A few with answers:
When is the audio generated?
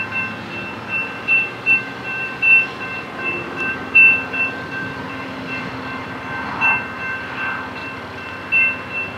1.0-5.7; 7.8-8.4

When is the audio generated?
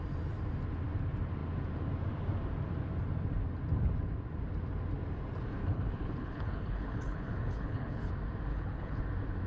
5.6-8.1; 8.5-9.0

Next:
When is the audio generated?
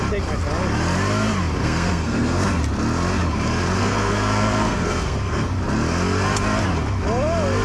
1.6-2.6; 3.8-5.5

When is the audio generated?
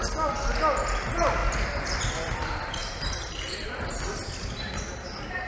1.4-3.7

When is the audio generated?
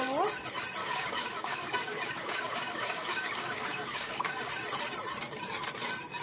0.8-4.5